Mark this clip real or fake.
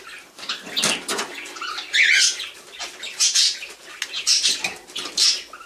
real